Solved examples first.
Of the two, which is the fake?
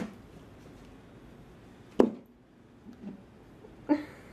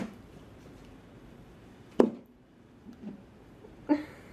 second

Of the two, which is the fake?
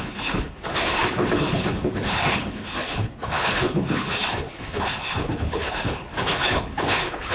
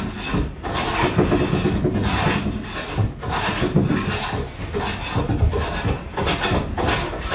first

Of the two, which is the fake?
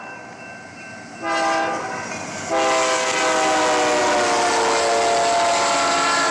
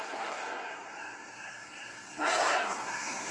second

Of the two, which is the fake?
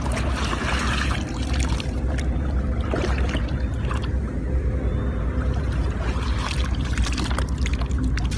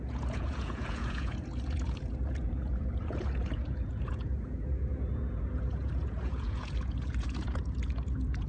second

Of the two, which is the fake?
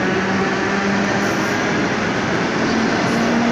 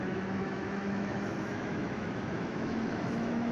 second